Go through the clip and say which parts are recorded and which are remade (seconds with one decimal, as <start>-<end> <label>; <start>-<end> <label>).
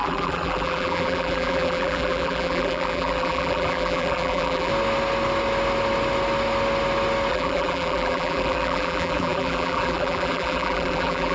0.0-4.7 remade; 4.7-7.3 recorded; 7.3-11.3 remade